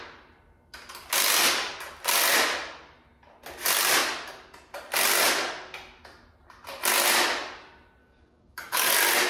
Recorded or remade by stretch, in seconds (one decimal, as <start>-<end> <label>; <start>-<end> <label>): 0.0-8.0 recorded; 8.0-8.9 remade; 8.9-9.3 recorded